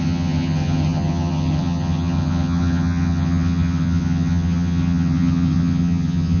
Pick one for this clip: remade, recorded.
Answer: remade